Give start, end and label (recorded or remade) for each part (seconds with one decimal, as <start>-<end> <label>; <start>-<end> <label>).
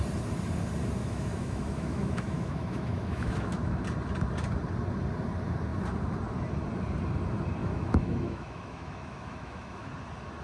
0.0-1.0 recorded; 1.0-3.8 remade; 3.8-7.6 recorded; 7.6-9.9 remade; 9.9-10.4 recorded